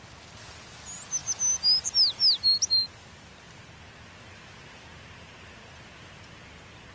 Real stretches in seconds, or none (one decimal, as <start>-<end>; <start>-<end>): 0.0-6.9